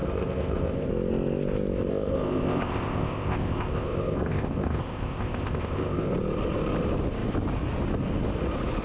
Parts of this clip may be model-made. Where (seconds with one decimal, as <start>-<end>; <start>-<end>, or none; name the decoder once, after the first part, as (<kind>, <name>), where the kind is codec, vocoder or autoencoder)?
0.0-0.9 (codec, ZipCodec); 1.9-6.1